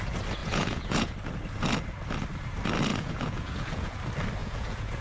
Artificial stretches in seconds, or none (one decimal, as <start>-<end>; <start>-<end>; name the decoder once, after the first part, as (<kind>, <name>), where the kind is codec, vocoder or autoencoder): 0.4-1.1 (vocoder, Vocos); 2.9-4.0; 4.4-5.0